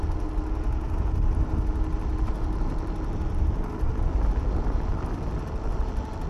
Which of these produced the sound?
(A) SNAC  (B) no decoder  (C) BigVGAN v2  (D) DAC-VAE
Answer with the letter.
B